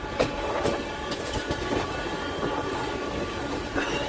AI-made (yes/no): no